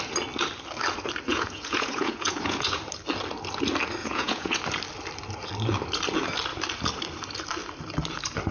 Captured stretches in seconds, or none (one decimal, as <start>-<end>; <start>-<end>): 0.0-1.3; 2.8-4.0; 4.6-8.5